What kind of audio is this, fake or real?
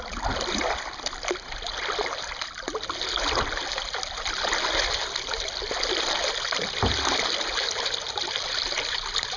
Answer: real